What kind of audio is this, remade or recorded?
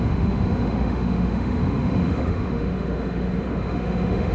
remade